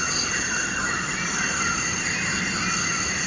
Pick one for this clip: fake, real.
real